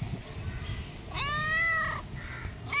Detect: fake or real real